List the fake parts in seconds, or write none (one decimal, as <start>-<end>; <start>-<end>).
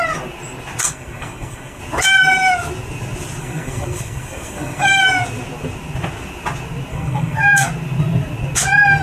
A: 0.8-1.8; 3.4-5.0; 6.9-7.7